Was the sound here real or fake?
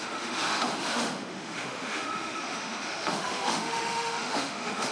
fake